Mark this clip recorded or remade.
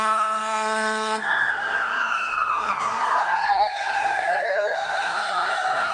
remade